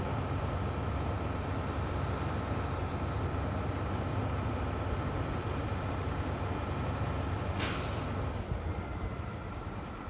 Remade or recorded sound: recorded